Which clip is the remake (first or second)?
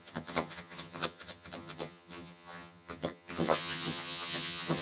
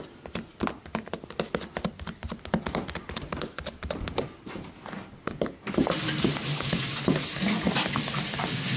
first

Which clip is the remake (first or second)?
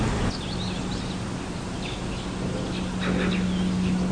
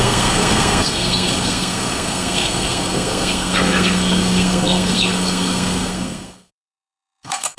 second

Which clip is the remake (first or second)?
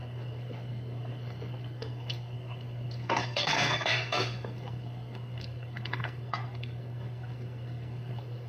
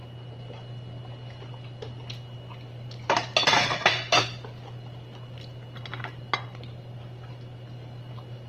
first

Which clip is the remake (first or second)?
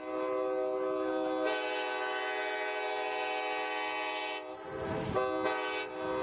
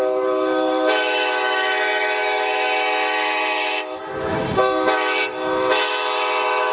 second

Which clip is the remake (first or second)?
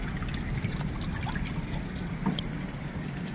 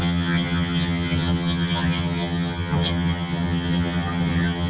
second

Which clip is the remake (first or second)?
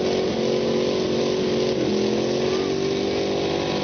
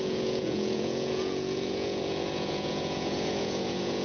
second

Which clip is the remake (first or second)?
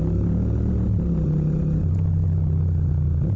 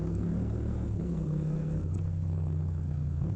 second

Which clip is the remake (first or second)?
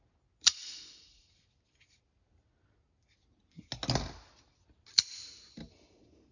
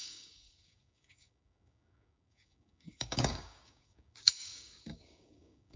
second